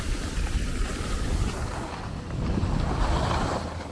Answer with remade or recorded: recorded